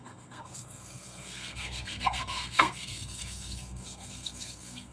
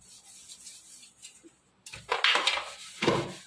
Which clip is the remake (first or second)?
first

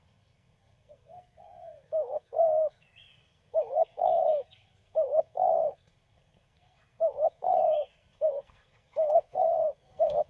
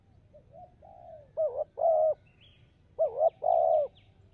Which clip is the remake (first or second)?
first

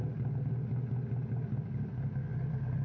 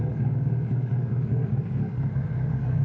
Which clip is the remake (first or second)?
second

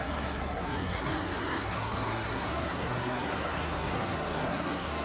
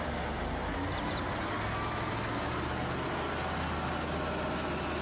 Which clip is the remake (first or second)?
first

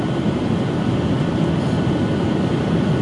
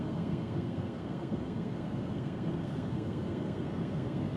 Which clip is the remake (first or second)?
second